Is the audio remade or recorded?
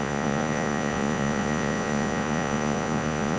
remade